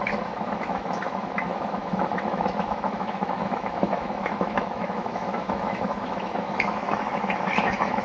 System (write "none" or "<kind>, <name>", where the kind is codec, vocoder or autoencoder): autoencoder, DAC-VAE